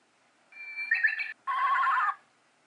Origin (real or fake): real